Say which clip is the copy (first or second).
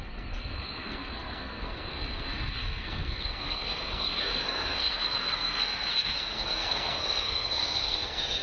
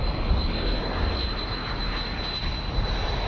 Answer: first